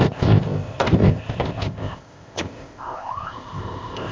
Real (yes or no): no